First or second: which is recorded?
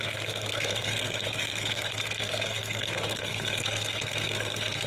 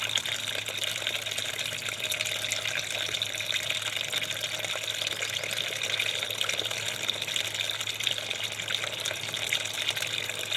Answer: second